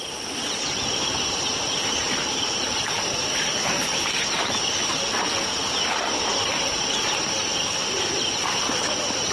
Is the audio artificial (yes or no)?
no